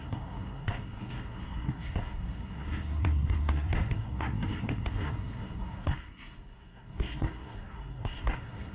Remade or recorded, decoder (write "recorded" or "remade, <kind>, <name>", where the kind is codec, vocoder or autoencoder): remade, codec, SNAC